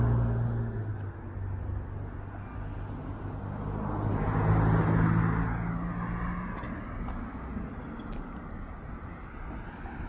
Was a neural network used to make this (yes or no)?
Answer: no